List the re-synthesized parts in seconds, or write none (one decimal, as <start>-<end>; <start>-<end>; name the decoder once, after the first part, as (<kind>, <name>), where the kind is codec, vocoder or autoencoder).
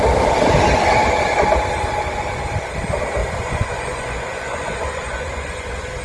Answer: 3.2-6.0 (vocoder, Vocos)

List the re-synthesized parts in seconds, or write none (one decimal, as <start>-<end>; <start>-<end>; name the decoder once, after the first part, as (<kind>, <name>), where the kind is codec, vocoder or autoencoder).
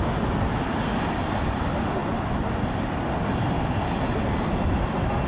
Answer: none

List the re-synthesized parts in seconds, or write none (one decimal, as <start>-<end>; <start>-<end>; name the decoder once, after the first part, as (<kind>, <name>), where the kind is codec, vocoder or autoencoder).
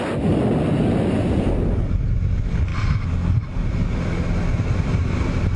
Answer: none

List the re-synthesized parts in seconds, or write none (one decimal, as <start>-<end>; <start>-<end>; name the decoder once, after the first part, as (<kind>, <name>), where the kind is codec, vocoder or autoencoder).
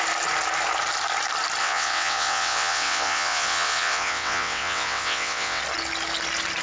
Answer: 1.6-5.6 (vocoder, WaveNeXt)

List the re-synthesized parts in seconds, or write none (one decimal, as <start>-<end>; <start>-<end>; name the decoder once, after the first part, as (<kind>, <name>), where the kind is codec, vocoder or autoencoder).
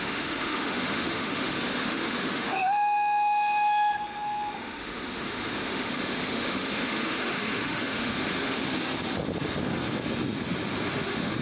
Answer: 0.0-8.6 (autoencoder, DAC-VAE); 11.0-11.4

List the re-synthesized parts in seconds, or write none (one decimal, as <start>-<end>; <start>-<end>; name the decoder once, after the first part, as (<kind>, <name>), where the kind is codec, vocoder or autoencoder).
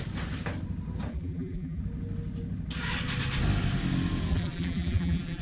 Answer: 1.1-1.8 (vocoder, BigVGAN v2); 4.3-5.4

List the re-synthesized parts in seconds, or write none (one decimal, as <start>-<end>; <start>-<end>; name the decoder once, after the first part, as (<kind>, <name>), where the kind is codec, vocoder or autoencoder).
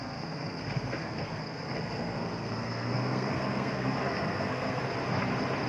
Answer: 0.0-4.8 (codec, SNAC)